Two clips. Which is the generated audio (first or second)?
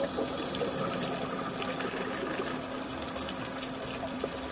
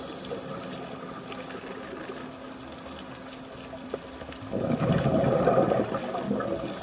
first